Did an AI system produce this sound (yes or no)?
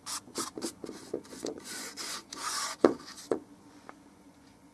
yes